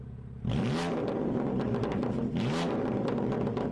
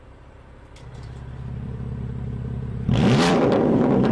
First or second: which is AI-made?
second